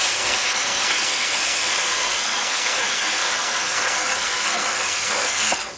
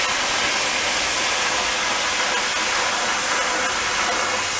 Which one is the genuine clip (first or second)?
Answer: second